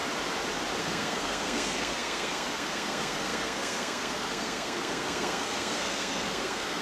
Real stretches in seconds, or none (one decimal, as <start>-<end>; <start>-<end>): 0.0-0.8